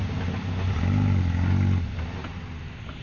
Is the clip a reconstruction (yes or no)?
no